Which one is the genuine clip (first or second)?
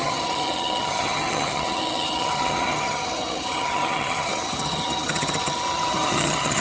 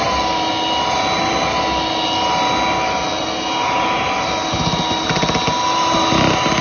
second